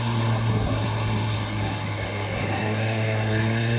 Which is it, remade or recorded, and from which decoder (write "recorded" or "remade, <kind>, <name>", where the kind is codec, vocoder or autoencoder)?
remade, codec, SNAC